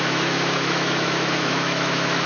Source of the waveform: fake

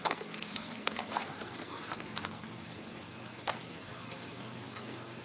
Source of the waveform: fake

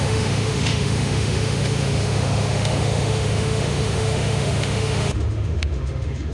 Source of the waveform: fake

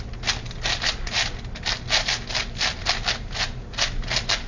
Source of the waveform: real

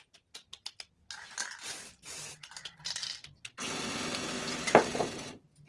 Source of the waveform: real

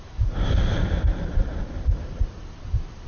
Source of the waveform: fake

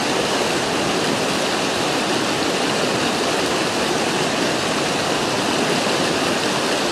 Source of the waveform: real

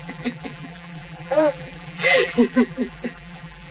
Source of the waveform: fake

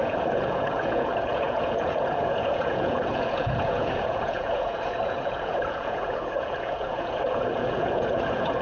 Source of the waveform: fake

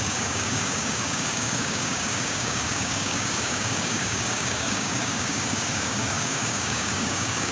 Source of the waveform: fake